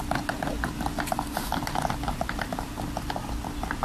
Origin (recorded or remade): recorded